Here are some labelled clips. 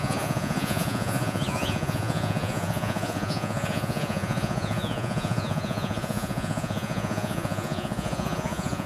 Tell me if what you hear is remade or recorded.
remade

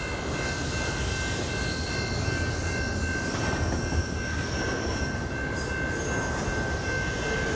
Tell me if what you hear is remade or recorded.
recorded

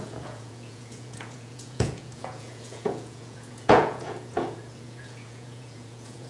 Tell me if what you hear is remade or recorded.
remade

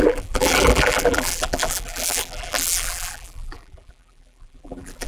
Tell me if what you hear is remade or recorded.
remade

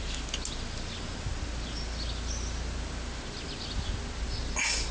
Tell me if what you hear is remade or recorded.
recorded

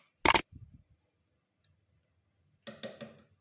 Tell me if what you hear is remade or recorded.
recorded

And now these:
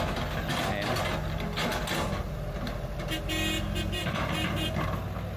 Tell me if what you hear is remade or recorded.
recorded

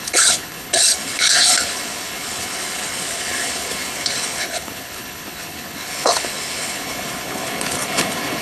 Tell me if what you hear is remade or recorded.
remade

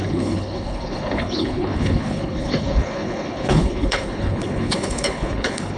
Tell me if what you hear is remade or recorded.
remade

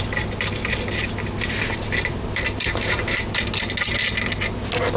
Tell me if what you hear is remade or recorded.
recorded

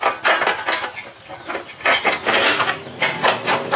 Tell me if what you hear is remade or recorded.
recorded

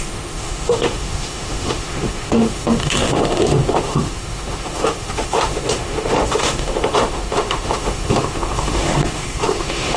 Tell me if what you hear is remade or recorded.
remade